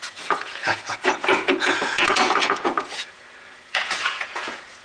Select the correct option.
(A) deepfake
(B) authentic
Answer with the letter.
A